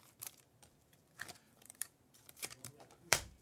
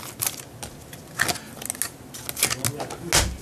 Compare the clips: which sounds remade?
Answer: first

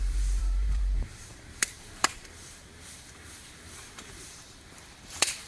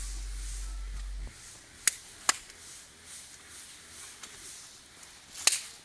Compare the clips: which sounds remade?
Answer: first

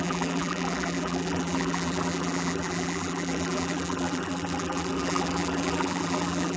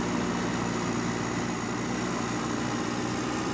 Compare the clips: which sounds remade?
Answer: first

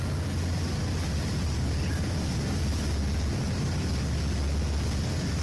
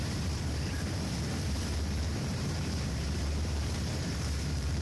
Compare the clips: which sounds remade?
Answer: second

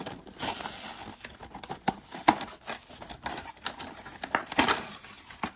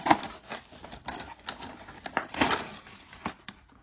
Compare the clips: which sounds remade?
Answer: second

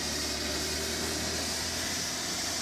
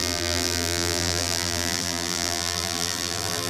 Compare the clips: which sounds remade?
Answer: second